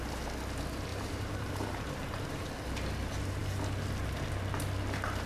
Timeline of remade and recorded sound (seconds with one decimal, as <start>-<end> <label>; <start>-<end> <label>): 0.0-0.9 recorded; 0.9-2.5 remade; 2.5-5.3 recorded